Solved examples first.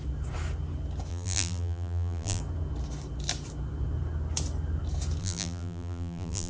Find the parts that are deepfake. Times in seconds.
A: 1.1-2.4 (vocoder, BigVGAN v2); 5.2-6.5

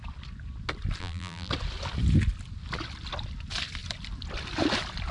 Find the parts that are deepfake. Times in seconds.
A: 1.0-1.5 (vocoder, BigVGAN v2)

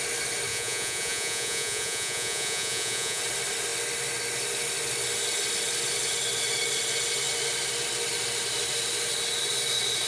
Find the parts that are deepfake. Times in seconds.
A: 0.5-3.2 (vocoder, Vocos)